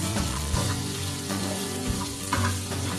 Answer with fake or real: fake